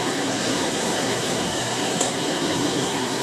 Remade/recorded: remade